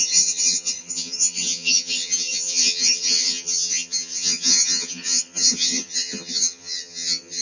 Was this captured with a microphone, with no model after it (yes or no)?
no